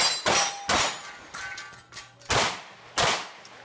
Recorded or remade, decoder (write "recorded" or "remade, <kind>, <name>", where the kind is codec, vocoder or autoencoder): recorded